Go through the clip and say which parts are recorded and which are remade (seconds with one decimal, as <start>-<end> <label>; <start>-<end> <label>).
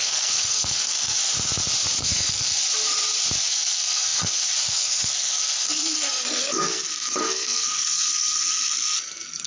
0.0-1.3 remade; 1.3-2.0 recorded; 2.0-2.6 remade; 2.6-3.4 recorded; 3.4-9.5 remade